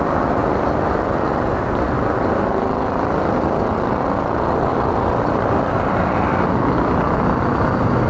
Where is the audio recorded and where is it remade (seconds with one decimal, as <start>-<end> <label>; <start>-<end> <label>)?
0.0-4.7 recorded; 4.7-6.5 remade; 6.5-8.1 recorded